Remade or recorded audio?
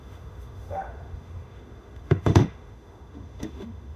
remade